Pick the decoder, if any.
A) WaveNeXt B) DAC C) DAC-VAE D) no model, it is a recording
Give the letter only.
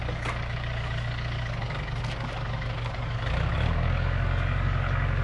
B